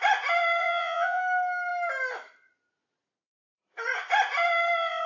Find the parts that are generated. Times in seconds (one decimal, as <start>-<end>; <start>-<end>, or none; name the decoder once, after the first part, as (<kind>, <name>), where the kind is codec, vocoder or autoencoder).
0.6-1.2 (vocoder, Vocos)